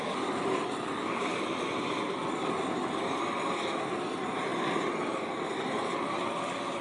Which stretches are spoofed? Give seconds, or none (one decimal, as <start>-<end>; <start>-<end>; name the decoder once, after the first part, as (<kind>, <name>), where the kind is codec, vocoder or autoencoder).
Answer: none